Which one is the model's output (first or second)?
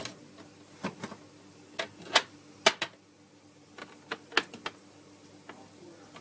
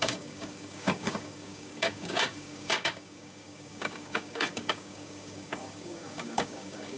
second